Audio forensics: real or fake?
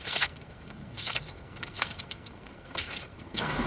fake